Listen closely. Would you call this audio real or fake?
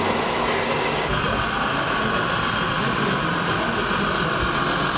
real